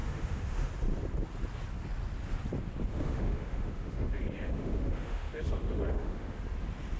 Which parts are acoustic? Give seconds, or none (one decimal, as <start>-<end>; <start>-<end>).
0.7-2.9; 6.4-7.0

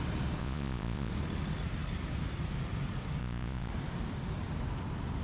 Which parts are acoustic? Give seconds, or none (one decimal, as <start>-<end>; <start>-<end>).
0.0-0.4; 1.1-3.2; 3.7-5.2

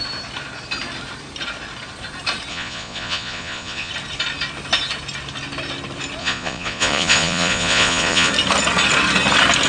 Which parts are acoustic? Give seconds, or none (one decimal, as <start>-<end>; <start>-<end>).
0.0-2.5; 3.9-6.2; 8.3-9.7

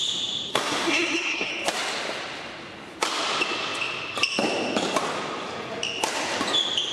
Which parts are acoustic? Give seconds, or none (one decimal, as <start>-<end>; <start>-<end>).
0.0-0.5; 1.5-6.9

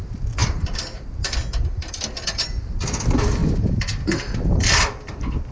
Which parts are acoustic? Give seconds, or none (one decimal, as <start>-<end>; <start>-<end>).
0.0-5.5

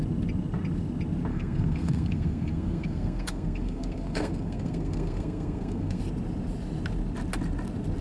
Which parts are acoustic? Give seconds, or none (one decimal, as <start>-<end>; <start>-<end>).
0.0-1.3; 6.0-8.0